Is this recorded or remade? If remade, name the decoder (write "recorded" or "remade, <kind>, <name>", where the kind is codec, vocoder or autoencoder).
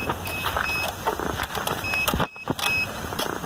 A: recorded